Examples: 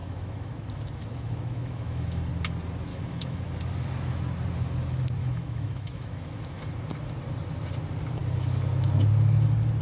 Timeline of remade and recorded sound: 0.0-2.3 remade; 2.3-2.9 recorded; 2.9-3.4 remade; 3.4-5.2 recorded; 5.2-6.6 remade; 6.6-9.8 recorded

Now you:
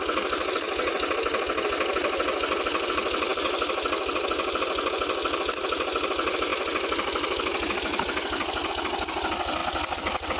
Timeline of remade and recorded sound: 0.0-10.4 recorded

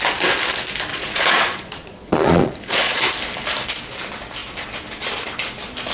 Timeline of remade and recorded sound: 0.0-0.9 recorded; 0.9-3.0 remade; 3.0-5.9 recorded

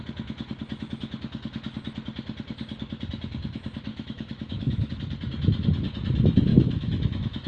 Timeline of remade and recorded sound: 0.0-3.9 recorded; 3.9-4.9 remade; 4.9-6.5 recorded; 6.5-7.5 remade

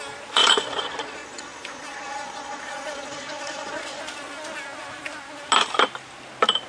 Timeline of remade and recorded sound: 0.0-0.4 recorded; 0.4-4.0 remade; 4.0-6.7 recorded

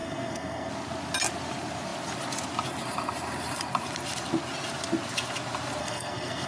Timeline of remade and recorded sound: 0.0-0.7 remade; 0.7-5.8 recorded; 5.8-6.5 remade